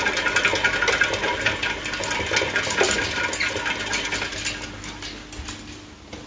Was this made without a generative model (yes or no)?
yes